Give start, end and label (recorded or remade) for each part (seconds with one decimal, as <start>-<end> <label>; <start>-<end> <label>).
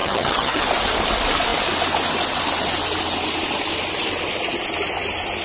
0.0-0.6 remade; 0.6-5.4 recorded